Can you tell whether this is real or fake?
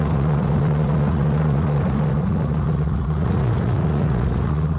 fake